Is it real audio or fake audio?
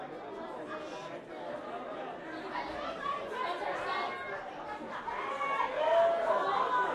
real